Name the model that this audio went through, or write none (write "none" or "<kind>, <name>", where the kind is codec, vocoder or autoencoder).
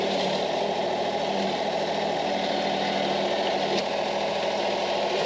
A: none